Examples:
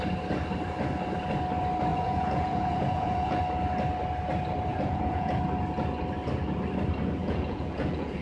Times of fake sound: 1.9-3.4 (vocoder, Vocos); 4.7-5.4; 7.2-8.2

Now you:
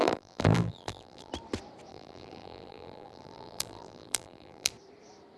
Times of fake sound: 0.0-1.3 (vocoder, BigVGAN v2); 1.9-4.7

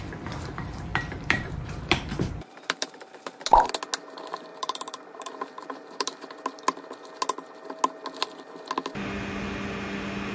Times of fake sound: 0.9-3.7 (vocoder, BigVGAN v2); 4.5-6.2